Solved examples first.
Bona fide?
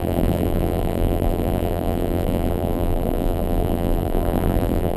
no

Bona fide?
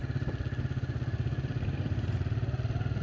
yes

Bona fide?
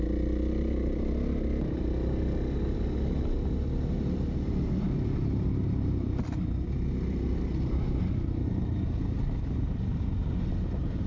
yes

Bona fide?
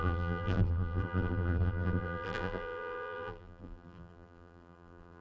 no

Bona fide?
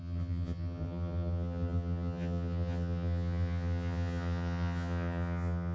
no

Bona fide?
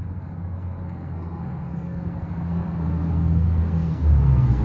no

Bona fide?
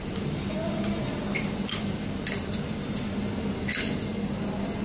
yes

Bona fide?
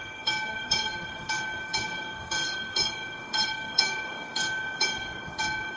no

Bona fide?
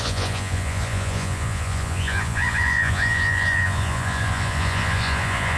no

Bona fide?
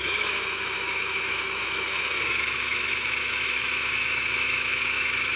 no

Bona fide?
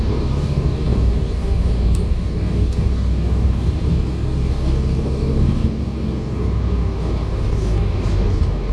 no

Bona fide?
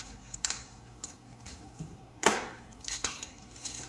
no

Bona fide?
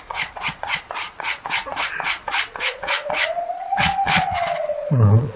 no